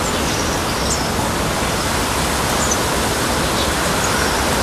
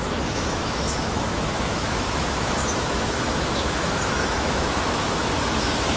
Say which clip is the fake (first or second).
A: second